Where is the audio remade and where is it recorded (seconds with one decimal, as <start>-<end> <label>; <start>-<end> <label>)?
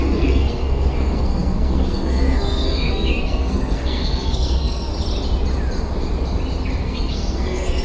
0.0-4.9 remade; 4.9-6.8 recorded; 6.8-7.8 remade